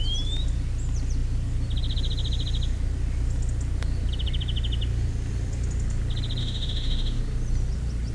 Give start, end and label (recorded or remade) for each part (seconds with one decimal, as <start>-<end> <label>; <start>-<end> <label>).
0.0-6.4 recorded; 6.4-7.2 remade; 7.2-8.1 recorded